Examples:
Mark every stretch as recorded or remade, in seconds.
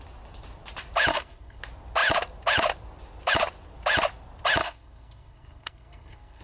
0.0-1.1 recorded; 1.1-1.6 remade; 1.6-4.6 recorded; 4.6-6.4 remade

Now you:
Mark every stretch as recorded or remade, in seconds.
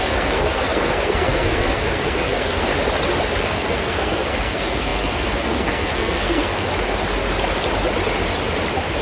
0.0-2.7 remade; 2.7-3.4 recorded; 3.4-6.7 remade; 6.7-9.0 recorded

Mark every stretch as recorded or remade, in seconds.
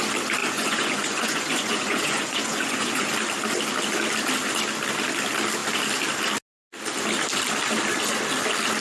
0.0-0.4 recorded; 0.4-3.1 remade; 3.1-8.8 recorded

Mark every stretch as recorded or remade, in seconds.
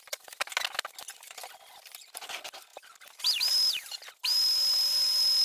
0.0-5.4 recorded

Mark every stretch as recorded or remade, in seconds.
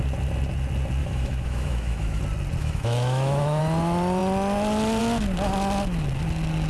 0.0-1.0 recorded; 1.0-2.2 remade; 2.2-2.6 recorded; 2.6-3.6 remade; 3.6-6.7 recorded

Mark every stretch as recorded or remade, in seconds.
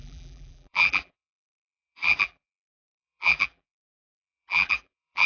0.0-5.3 remade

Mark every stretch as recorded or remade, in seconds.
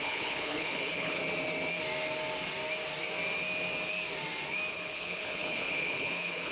0.0-1.2 remade; 1.2-4.7 recorded; 4.7-6.5 remade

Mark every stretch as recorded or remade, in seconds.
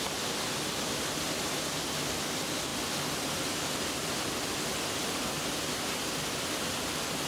0.0-7.3 recorded